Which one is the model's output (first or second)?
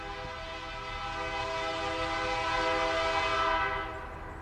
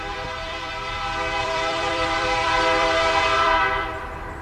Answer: second